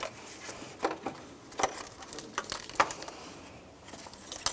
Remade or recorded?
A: recorded